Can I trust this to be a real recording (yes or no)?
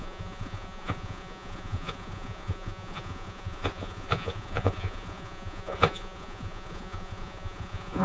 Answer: no